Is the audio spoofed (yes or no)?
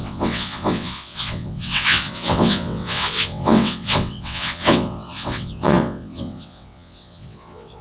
yes